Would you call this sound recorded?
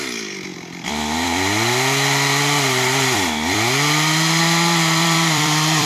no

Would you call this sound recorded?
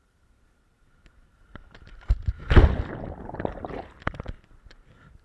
no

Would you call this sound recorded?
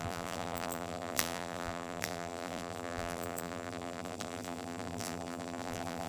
no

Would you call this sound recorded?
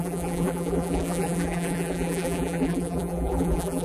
no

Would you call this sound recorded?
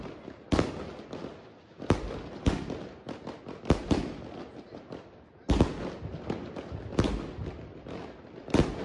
yes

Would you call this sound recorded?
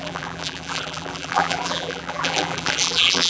no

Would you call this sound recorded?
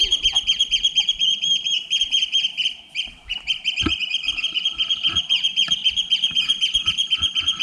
yes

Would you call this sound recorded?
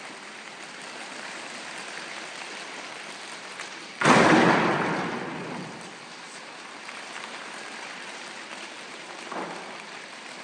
no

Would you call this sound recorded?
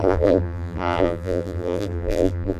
no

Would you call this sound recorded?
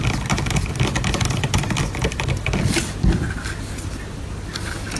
yes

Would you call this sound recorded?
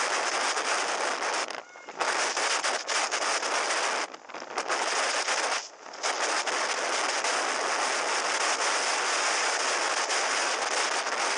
yes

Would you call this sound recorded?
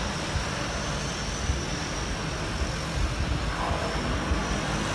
yes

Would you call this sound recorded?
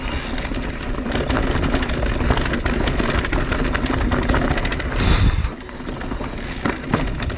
yes